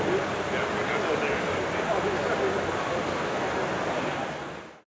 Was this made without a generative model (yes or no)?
yes